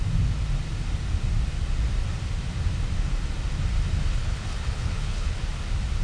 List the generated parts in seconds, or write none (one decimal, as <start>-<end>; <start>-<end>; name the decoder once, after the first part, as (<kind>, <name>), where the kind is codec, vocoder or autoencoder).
4.2-5.4 (codec, HILCodec)